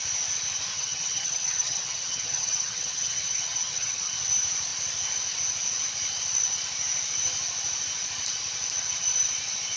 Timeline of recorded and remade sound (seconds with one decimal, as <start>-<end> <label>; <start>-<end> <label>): 0.0-0.7 recorded; 0.7-4.1 remade; 4.1-9.8 recorded